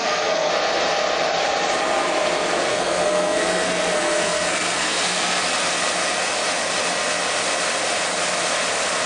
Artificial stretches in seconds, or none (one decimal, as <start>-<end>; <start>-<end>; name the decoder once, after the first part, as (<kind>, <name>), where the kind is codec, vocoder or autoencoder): 0.0-0.5 (codec, SNAC); 2.7-5.4